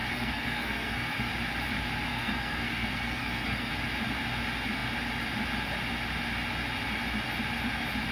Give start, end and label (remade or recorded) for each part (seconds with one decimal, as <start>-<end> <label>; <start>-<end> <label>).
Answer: 0.0-1.3 remade; 1.3-2.1 recorded; 2.1-3.7 remade; 3.7-8.1 recorded